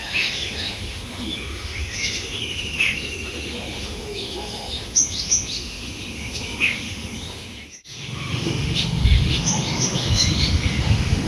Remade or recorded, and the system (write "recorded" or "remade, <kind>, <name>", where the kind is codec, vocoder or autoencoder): remade, autoencoder, DAC-VAE